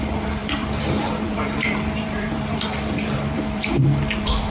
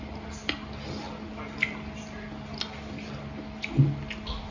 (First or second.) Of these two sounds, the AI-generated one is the first